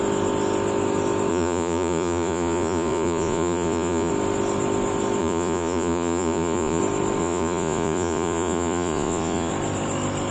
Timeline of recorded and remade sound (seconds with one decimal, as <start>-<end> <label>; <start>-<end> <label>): 0.0-1.3 recorded; 1.3-4.1 remade; 4.1-5.2 recorded; 5.2-6.8 remade; 6.8-7.2 recorded; 7.2-9.5 remade; 9.5-10.3 recorded